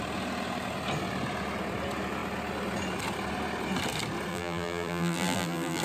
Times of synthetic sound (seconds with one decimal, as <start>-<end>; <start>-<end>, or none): 4.3-5.8